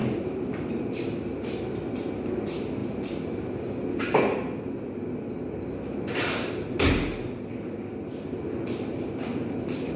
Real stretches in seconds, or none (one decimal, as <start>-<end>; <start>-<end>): 0.0-10.0